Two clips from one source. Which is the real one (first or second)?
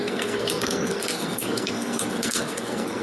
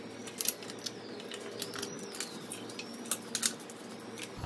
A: second